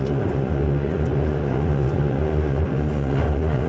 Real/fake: fake